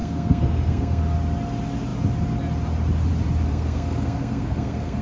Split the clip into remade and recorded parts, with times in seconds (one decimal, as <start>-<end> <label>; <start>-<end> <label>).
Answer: 0.0-1.0 remade; 1.0-3.5 recorded; 3.5-5.0 remade